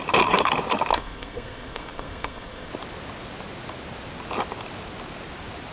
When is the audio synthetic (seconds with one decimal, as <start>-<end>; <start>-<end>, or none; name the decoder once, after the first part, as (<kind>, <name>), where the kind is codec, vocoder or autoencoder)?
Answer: 0.9-2.7 (codec, SNAC)

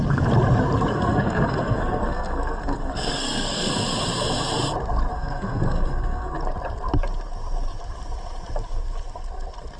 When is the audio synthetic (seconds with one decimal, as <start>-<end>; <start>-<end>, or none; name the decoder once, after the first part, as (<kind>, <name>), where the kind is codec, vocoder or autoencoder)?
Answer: 0.9-3.7 (codec, SNAC); 5.1-6.4